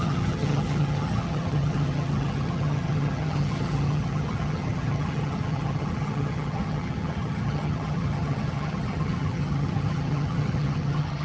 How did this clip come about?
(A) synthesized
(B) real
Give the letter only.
A